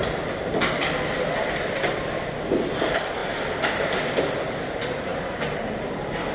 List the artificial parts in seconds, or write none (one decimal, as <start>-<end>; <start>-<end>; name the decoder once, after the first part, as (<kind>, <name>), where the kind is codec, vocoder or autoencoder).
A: none